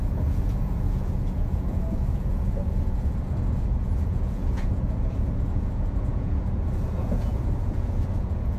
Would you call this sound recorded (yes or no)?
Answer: no